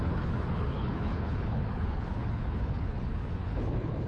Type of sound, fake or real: fake